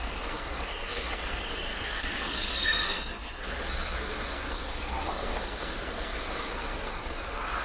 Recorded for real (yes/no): no